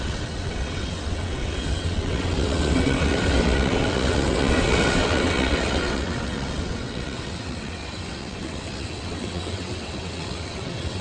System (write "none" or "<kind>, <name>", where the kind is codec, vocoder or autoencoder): vocoder, WaveNeXt